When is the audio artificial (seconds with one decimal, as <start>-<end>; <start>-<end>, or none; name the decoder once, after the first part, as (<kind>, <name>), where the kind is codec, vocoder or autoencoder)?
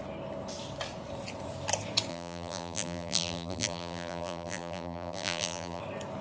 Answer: 2.1-5.8 (vocoder, BigVGAN v2)